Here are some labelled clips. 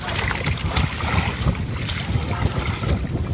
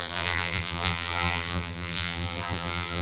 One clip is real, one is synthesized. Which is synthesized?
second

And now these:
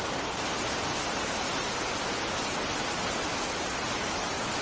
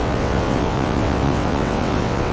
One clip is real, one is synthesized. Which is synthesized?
second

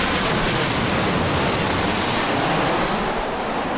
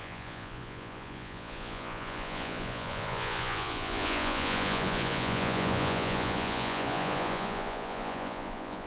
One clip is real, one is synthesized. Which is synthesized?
second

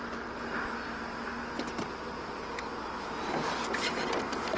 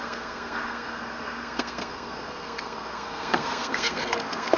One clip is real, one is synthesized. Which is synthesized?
second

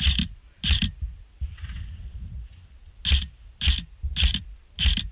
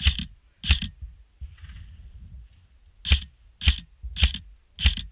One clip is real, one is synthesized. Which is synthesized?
first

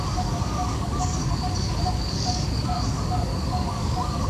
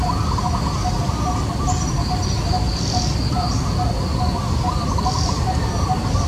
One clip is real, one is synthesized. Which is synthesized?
first